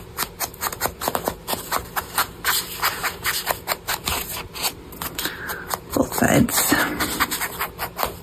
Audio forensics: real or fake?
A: real